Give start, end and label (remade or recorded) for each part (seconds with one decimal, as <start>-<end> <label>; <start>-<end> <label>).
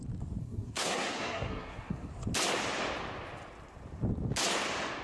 0.0-0.4 recorded; 0.4-2.1 remade; 2.1-5.0 recorded